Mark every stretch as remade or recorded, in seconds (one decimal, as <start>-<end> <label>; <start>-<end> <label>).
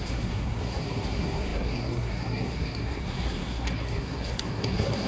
0.0-5.1 remade